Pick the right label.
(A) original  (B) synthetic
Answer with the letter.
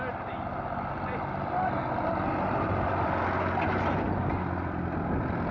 A